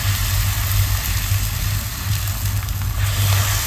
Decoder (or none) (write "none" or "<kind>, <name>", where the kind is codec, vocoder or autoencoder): none